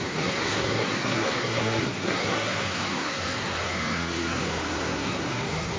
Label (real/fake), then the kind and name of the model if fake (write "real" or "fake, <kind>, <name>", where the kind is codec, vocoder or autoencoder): fake, codec, SNAC